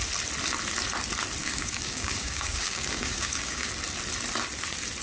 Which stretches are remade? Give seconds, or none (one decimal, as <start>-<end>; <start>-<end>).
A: 1.4-3.7